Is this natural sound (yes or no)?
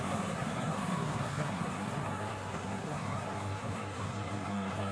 no